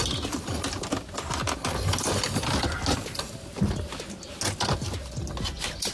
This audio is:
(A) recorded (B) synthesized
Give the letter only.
A